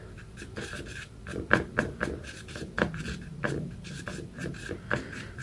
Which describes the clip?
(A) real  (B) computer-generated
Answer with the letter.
B